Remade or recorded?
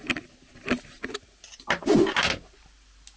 recorded